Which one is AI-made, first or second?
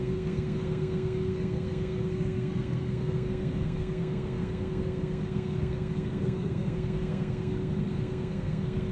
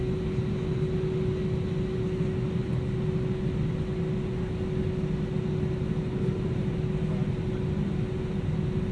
first